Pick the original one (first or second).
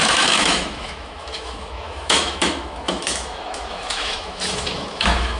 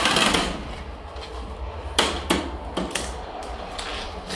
second